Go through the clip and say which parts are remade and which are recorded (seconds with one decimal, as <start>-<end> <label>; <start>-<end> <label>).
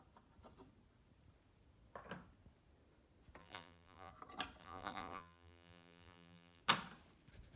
0.0-3.4 recorded; 3.4-4.1 remade; 4.1-4.6 recorded; 4.6-6.6 remade; 6.6-7.6 recorded